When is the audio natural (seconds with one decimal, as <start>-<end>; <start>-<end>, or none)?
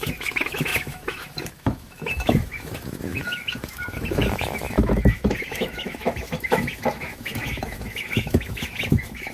none